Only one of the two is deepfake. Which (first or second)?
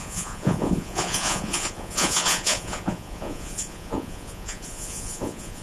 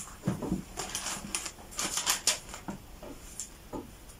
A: first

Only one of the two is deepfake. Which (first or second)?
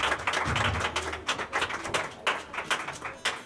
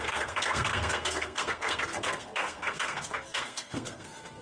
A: second